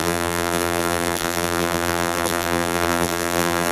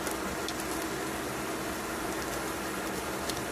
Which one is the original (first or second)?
second